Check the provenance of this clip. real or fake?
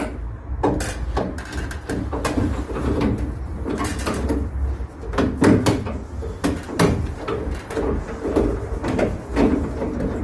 real